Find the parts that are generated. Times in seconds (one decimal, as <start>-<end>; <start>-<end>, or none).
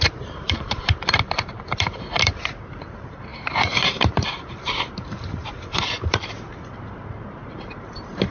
0.0-8.3